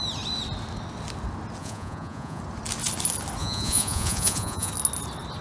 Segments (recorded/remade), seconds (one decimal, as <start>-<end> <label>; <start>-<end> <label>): 0.0-1.6 recorded; 1.6-2.4 remade; 2.4-3.4 recorded; 3.4-4.7 remade; 4.7-5.4 recorded